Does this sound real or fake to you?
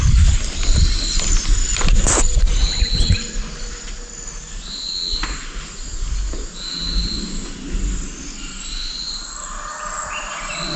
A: real